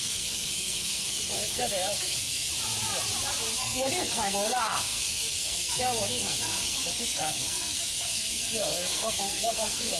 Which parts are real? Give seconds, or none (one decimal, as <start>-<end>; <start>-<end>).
2.5-3.6